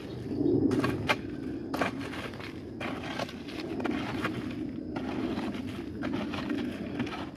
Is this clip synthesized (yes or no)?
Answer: no